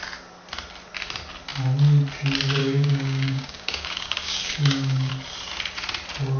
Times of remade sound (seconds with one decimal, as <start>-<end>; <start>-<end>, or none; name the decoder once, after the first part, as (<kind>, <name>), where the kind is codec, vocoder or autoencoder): 2.6-5.1 (codec, DAC)